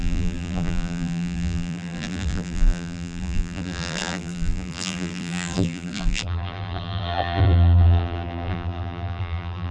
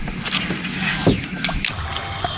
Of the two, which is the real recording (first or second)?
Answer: second